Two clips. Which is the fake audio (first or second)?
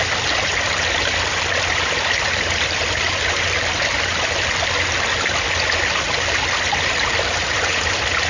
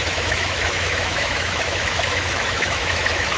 second